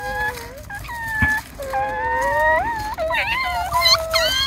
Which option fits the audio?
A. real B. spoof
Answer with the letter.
A